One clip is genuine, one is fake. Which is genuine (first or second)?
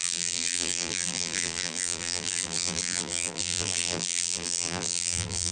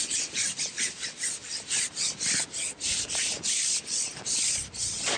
second